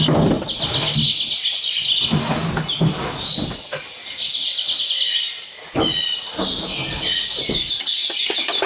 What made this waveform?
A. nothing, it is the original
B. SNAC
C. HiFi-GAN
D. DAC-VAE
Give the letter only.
A